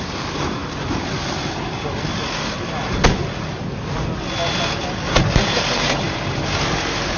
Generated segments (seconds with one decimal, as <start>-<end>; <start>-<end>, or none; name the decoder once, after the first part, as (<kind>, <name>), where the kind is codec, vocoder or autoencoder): none